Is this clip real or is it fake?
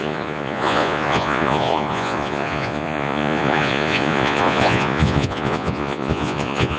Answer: fake